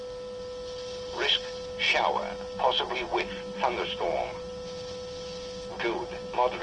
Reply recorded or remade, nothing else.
recorded